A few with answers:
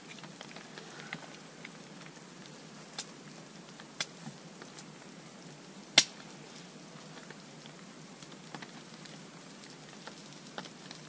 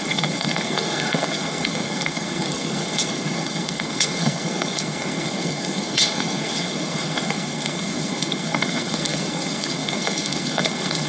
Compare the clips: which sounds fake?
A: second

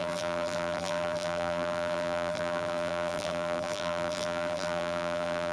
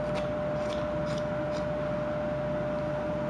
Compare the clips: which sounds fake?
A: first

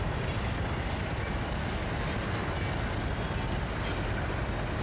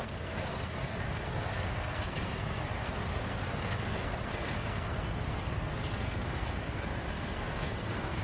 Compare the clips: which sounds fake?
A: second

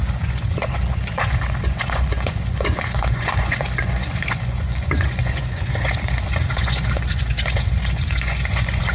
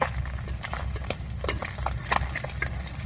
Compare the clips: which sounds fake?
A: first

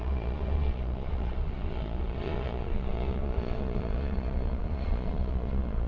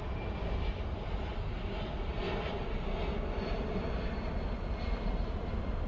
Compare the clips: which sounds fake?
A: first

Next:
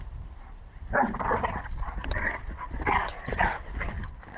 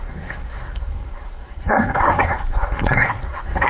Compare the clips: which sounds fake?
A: second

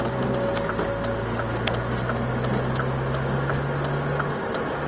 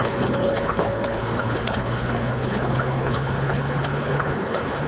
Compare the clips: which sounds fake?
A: second